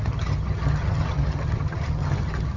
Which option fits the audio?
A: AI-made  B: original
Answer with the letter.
A